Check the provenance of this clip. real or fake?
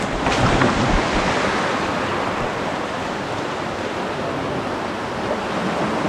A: real